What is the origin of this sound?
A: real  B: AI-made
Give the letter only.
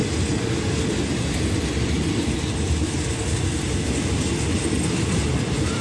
A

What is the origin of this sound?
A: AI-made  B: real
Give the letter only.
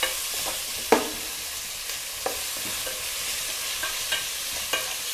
B